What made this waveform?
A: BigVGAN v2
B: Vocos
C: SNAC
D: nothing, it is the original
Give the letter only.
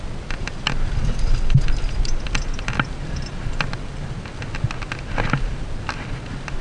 D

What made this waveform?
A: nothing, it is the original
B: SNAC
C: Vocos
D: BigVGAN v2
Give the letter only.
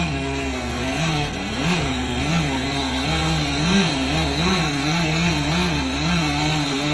B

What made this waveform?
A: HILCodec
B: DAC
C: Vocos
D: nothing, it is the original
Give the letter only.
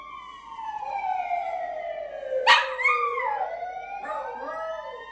D